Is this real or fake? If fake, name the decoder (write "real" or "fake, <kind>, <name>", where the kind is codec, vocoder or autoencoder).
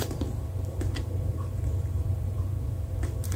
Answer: fake, vocoder, BigVGAN v2